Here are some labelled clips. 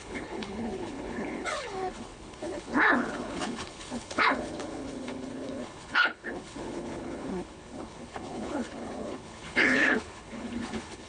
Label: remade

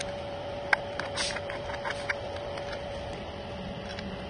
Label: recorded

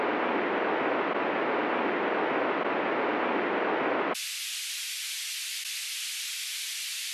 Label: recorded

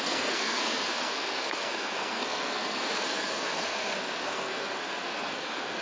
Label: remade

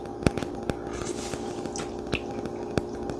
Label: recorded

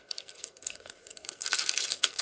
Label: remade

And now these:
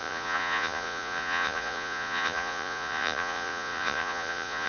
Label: remade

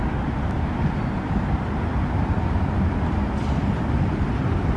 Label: recorded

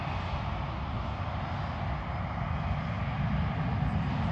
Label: recorded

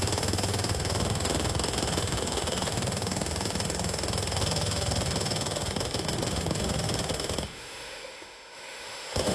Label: remade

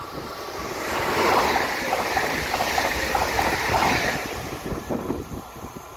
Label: remade